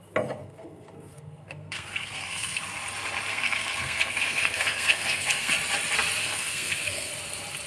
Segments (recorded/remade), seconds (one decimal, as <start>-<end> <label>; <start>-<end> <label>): 0.0-0.4 recorded; 0.4-2.6 remade; 2.6-3.3 recorded; 3.3-5.5 remade; 5.5-6.2 recorded; 6.2-7.1 remade; 7.1-7.7 recorded